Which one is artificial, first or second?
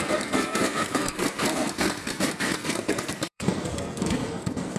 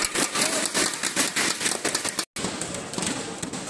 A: first